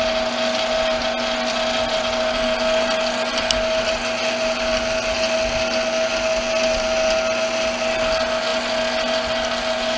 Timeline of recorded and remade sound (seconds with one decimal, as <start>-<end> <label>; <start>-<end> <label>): 0.0-10.0 recorded